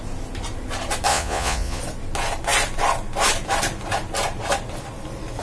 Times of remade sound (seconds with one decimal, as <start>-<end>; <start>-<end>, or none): 1.1-1.8